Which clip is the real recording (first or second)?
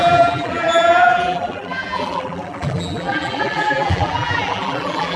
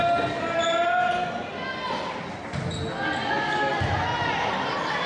second